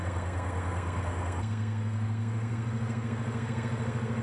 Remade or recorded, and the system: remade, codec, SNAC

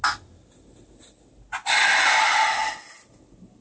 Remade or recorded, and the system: recorded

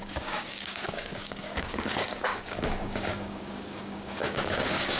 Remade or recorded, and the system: remade, codec, DAC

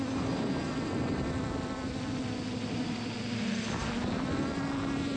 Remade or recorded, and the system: recorded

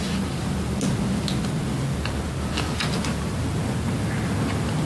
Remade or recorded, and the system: recorded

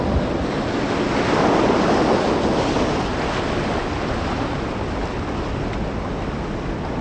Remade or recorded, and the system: recorded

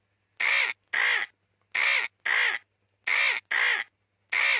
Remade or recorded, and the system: recorded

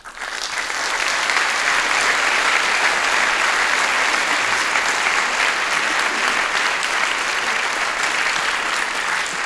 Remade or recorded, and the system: recorded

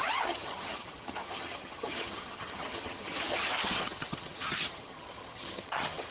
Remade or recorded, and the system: remade, vocoder, HiFi-GAN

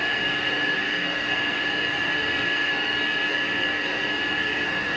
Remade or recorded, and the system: remade, codec, SNAC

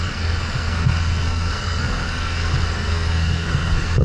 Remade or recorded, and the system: remade, codec, SNAC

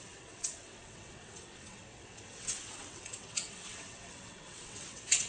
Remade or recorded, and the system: remade, vocoder, WaveNeXt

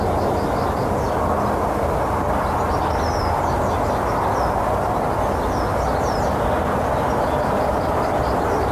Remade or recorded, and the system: recorded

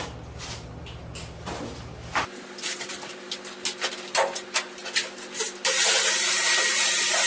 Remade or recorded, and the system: recorded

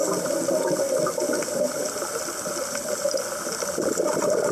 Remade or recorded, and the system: recorded